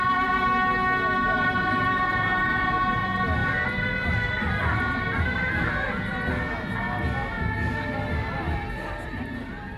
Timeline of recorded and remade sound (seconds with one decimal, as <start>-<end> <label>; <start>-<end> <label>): 0.0-9.8 recorded